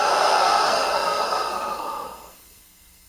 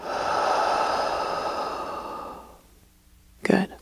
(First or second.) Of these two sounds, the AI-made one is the first